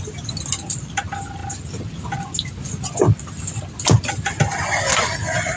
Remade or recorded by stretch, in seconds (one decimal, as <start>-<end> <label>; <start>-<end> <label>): 0.0-5.6 recorded